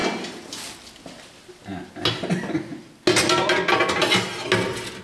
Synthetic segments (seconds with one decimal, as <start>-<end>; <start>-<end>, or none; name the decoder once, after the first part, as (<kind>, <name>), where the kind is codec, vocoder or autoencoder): none